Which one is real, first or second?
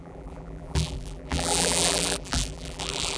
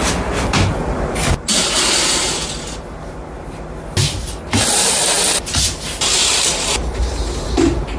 second